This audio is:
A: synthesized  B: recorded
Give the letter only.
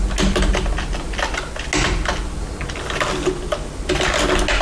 B